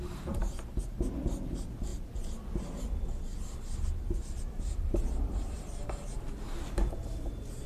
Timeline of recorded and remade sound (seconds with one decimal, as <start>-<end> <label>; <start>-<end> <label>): 0.0-3.3 recorded; 3.3-7.7 remade